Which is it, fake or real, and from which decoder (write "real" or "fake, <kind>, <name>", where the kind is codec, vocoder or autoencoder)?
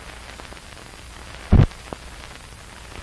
real